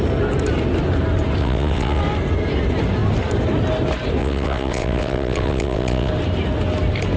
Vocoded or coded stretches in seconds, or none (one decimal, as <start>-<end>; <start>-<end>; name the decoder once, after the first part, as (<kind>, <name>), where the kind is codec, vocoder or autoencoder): 1.4-2.0 (vocoder, WaveNeXt); 4.2-6.1